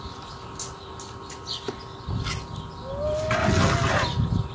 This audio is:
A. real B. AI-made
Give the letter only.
A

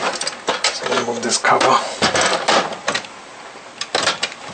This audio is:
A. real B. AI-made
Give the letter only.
A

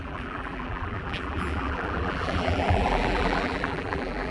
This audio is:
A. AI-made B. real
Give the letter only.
A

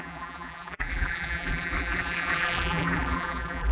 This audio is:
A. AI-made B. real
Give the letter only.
A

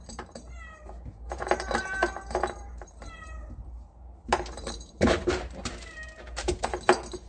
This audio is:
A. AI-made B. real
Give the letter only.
A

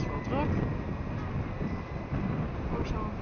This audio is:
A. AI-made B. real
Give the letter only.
B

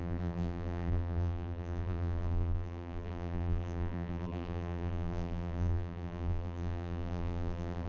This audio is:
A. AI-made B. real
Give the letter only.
A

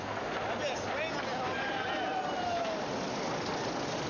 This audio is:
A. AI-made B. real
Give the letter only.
B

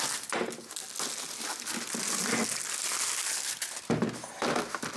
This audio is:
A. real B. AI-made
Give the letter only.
A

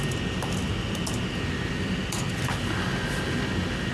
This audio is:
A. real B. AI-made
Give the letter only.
A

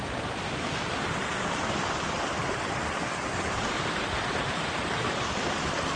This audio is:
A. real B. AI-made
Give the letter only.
B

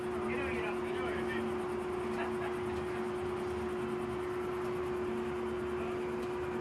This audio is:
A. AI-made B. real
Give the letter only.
B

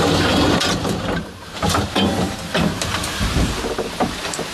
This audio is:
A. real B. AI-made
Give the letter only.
B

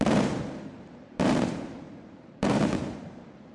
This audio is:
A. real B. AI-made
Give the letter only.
B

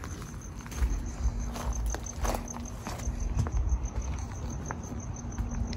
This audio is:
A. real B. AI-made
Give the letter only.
A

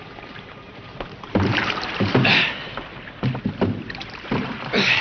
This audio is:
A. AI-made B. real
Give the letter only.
A